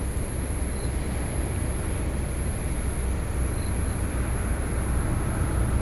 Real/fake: real